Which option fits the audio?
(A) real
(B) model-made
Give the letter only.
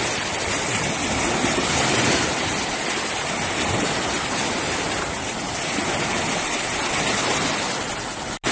A